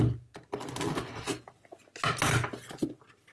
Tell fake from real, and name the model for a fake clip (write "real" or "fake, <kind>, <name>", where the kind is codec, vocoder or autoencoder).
real